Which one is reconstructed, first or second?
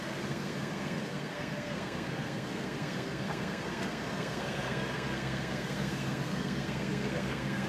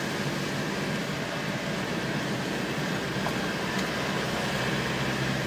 first